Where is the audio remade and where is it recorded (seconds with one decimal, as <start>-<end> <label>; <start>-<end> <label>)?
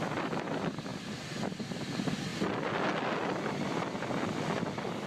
0.0-5.1 recorded